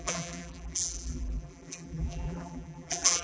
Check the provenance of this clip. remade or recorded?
remade